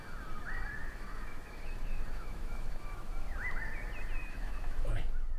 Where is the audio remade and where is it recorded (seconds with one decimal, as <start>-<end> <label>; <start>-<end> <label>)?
0.0-0.8 recorded; 0.8-3.1 remade; 3.1-4.2 recorded; 4.2-4.9 remade; 4.9-5.4 recorded